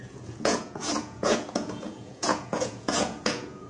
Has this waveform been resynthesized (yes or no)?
yes